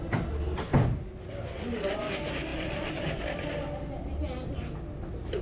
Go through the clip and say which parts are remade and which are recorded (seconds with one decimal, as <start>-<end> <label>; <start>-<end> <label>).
0.0-5.4 recorded